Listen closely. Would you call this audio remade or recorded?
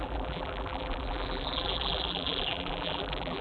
remade